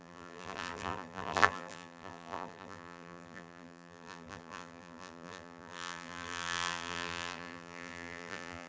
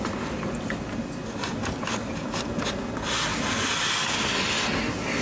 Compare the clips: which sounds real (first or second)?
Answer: second